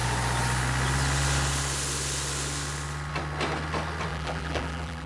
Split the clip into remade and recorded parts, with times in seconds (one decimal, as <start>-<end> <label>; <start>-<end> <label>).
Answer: 0.0-4.1 recorded; 4.1-5.1 remade